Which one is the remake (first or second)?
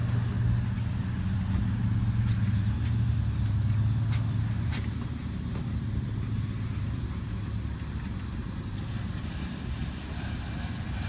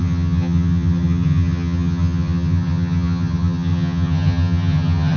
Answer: second